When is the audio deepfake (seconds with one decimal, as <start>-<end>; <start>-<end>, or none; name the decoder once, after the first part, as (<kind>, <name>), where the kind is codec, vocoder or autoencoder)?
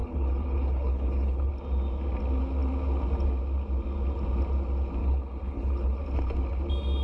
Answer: 0.0-1.5 (codec, HILCodec); 5.0-6.0